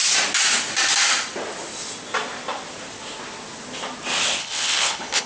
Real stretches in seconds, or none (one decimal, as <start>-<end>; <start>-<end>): 0.0-4.4